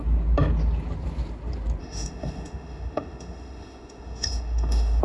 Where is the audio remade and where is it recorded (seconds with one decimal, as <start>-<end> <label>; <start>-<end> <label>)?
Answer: 0.0-1.8 recorded; 1.8-5.0 remade